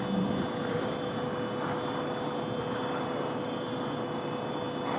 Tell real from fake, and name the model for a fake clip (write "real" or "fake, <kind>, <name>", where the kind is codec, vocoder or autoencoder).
real